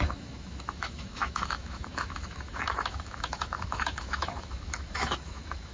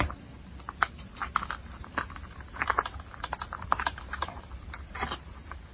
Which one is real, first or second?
second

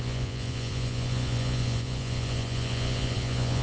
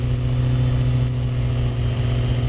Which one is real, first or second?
second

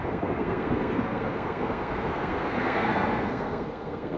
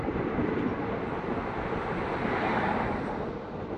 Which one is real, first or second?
second